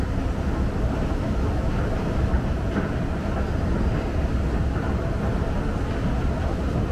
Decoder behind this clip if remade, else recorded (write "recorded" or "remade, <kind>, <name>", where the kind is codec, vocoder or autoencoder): recorded